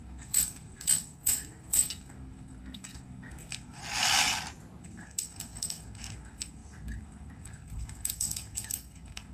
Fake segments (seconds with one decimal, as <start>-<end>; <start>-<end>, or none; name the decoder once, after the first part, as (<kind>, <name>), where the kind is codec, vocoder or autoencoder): 0.0-3.8 (codec, SNAC); 4.8-9.3